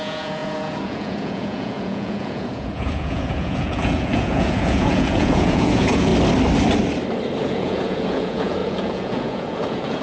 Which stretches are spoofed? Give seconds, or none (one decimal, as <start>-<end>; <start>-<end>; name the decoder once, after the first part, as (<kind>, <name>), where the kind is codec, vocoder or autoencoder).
0.0-6.1 (vocoder, Vocos); 7.4-10.0